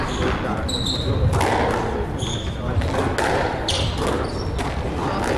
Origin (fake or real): real